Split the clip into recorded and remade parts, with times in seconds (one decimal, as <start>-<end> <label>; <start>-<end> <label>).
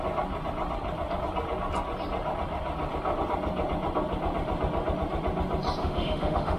0.0-5.8 recorded; 5.8-6.6 remade